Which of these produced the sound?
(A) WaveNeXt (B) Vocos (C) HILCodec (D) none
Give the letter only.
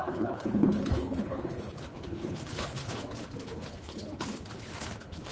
C